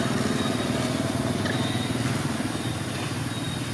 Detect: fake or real real